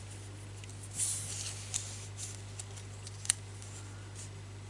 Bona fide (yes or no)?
yes